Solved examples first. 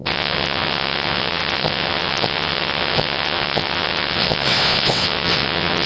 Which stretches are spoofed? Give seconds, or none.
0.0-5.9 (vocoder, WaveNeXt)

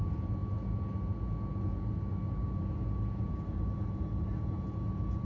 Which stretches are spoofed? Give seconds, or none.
none

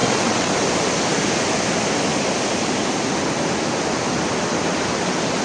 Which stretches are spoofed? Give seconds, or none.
0.0-0.5 (vocoder, WaveNeXt)

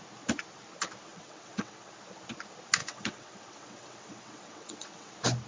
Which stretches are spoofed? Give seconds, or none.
1.1-1.9 (vocoder, WaveNeXt); 2.8-5.1

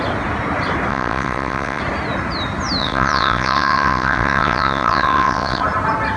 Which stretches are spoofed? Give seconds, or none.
0.9-1.8 (vocoder, WaveNeXt); 2.8-5.6